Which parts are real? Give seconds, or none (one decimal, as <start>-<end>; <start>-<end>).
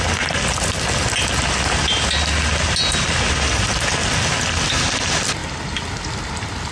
0.0-6.7